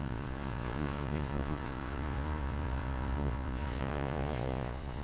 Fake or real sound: fake